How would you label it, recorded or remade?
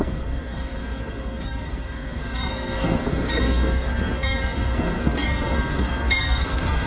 remade